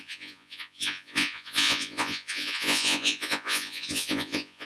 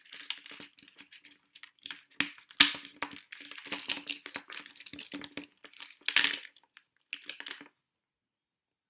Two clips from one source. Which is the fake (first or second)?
first